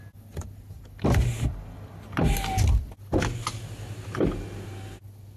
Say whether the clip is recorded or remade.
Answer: recorded